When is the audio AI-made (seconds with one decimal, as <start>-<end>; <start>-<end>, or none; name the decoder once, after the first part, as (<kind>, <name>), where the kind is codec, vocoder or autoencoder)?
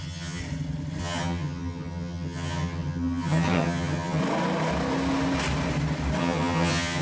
0.0-0.4 (vocoder, HiFi-GAN); 1.0-4.2; 6.2-7.0